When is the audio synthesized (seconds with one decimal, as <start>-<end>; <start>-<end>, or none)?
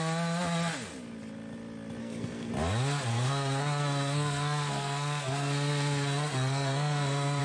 2.0-2.5; 3.1-7.4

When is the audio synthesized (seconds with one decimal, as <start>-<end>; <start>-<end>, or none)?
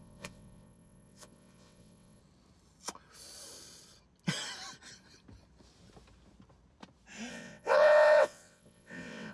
0.0-2.2; 7.3-9.3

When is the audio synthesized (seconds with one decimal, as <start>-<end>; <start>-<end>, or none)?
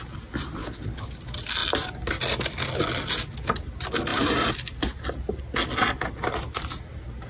0.6-1.1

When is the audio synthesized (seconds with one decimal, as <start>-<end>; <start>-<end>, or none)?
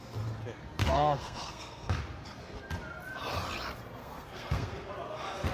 0.8-2.0; 4.0-4.9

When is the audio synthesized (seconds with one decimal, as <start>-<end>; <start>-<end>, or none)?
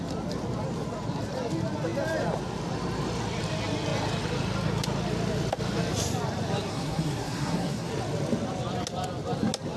6.7-7.9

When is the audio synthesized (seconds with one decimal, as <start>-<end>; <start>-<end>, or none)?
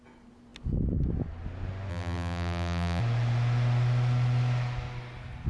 1.9-3.0